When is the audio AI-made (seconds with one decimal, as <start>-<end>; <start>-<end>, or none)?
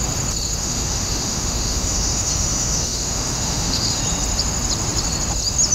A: 0.6-4.0